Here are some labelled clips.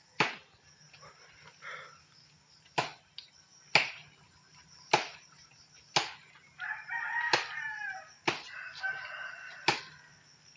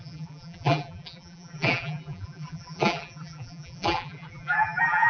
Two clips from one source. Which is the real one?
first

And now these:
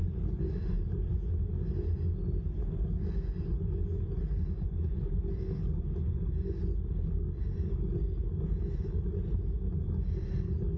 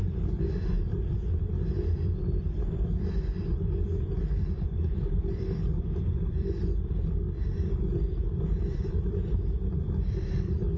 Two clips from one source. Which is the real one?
first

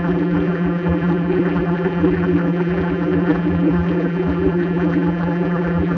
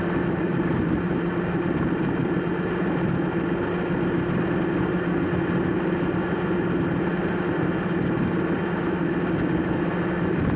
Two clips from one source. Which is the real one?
second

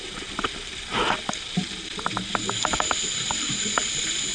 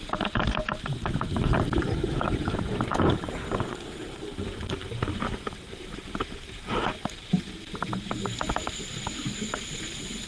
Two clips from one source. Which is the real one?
first